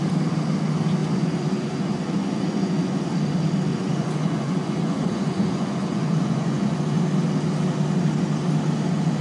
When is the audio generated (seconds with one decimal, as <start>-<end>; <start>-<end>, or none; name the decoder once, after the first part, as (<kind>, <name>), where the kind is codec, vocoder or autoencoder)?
1.0-3.1 (vocoder, Vocos); 3.7-6.8